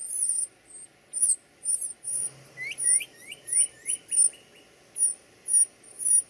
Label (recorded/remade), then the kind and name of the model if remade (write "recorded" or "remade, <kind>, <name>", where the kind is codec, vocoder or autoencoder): recorded